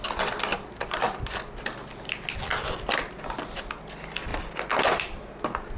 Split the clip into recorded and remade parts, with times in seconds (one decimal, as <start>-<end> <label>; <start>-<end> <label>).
0.0-0.5 recorded; 0.5-1.2 remade; 1.2-5.8 recorded